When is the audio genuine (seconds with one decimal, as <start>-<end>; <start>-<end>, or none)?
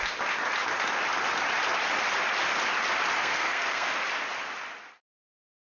0.0-3.2; 3.9-5.7